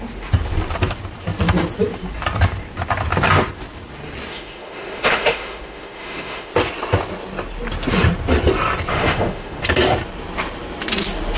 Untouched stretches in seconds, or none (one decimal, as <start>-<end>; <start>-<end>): 0.0-4.3; 6.5-8.9; 9.6-11.4